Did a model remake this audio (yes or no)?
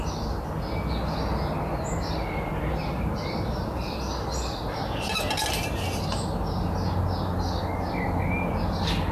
no